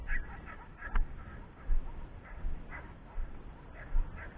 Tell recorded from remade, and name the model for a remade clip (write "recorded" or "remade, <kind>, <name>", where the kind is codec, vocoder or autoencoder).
recorded